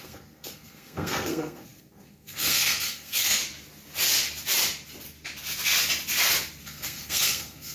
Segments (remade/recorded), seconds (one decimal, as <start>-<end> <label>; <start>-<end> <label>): 0.0-3.4 remade; 3.4-6.6 recorded; 6.6-7.7 remade